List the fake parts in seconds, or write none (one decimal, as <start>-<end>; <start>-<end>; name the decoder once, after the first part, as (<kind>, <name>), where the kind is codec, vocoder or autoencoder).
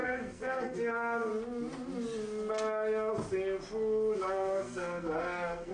0.0-1.3 (codec, SNAC); 4.2-5.7